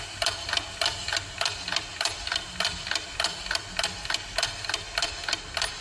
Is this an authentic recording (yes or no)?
yes